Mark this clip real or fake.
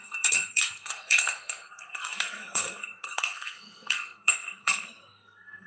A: fake